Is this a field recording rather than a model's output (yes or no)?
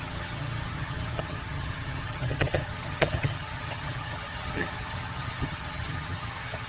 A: no